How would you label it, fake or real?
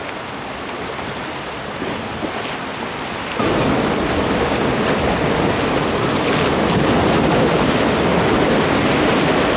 real